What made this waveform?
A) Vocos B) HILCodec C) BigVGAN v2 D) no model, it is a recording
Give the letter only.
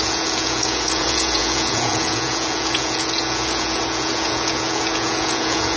A